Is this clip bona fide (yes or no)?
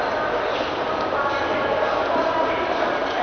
yes